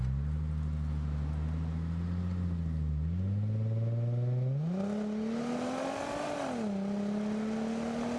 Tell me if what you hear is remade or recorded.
recorded